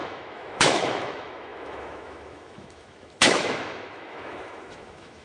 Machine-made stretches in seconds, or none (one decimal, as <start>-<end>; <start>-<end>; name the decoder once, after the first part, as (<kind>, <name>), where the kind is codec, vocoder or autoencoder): 0.0-5.2 (autoencoder, DAC-VAE)